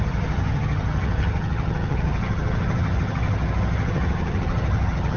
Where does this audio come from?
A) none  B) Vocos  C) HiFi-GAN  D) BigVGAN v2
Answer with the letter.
C